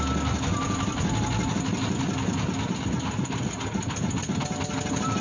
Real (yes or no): yes